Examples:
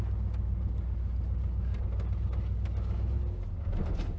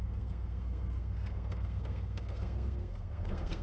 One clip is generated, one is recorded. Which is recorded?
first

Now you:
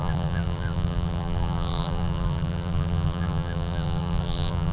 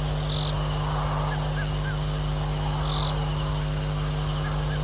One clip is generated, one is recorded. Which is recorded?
second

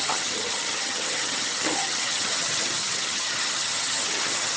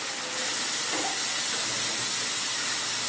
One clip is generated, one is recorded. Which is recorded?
second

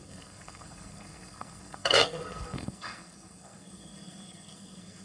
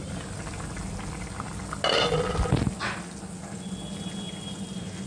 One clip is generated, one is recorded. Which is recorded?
second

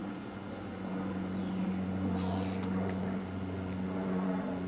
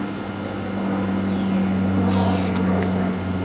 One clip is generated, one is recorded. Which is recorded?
second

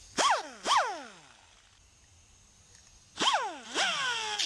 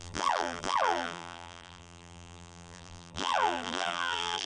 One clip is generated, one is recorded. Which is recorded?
first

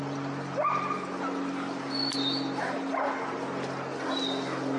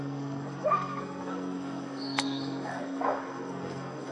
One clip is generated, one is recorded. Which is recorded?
first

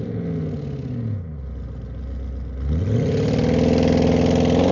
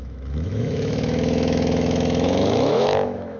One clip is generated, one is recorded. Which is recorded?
first